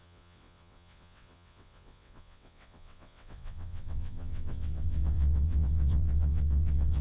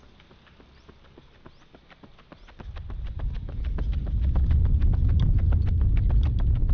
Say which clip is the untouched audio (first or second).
second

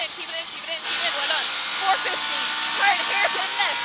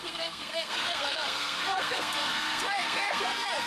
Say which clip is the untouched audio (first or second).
first